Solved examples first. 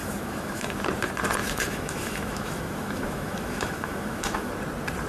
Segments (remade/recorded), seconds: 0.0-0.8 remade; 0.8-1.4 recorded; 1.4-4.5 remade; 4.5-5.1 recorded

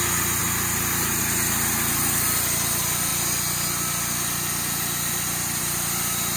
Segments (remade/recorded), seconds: 0.0-6.4 recorded

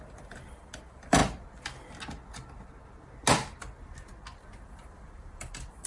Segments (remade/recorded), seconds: 0.0-1.2 remade; 1.2-4.7 recorded; 4.7-5.9 remade

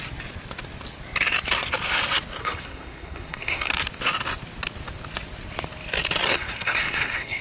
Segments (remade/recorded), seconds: 0.0-2.4 recorded; 2.4-3.7 remade; 3.7-6.3 recorded; 6.3-7.4 remade